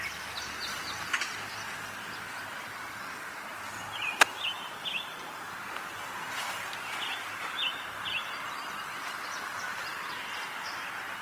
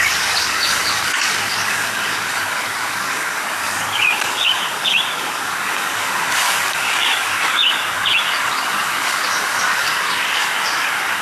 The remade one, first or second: second